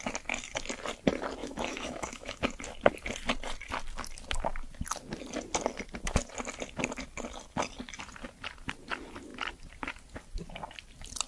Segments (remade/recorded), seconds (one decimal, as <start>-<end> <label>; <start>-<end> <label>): 0.0-1.4 recorded; 1.4-2.4 remade; 2.4-11.3 recorded